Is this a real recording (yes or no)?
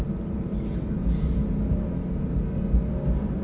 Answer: yes